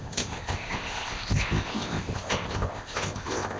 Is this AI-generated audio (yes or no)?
yes